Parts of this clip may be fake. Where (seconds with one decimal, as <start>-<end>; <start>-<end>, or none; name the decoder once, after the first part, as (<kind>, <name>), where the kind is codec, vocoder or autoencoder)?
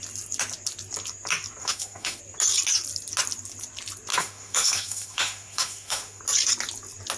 1.6-2.2 (autoencoder, DAC-VAE); 4.1-6.2